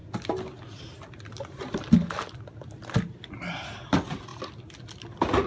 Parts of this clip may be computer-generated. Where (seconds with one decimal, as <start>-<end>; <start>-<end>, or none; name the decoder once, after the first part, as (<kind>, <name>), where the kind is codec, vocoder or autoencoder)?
none